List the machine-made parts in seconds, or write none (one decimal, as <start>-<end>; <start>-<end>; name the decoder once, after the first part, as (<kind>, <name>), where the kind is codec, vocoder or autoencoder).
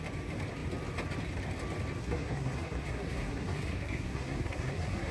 2.0-5.1 (codec, SNAC)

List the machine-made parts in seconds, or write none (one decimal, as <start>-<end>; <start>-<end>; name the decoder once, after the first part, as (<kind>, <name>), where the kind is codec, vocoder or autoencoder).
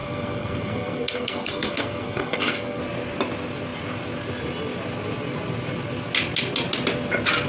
0.0-2.8 (codec, SNAC)